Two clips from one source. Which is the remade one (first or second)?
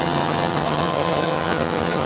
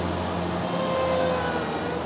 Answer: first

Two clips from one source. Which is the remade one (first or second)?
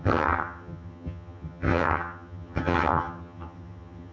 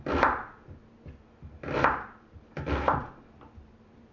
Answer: first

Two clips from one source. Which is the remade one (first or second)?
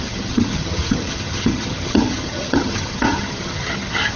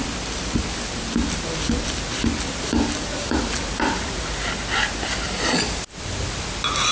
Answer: first